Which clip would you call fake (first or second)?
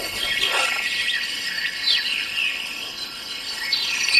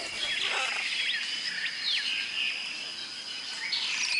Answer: first